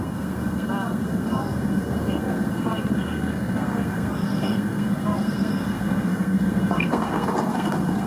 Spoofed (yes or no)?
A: yes